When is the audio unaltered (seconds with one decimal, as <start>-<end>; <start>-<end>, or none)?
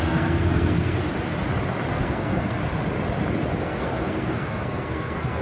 1.0-1.9; 2.6-3.6